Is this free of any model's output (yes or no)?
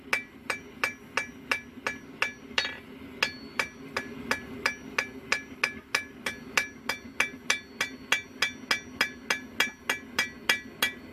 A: yes